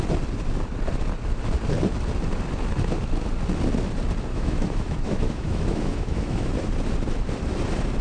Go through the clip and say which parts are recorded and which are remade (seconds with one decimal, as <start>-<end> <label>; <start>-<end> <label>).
0.0-4.3 recorded; 4.3-6.5 remade; 6.5-8.0 recorded